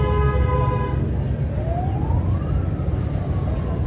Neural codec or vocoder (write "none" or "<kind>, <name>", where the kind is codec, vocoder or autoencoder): none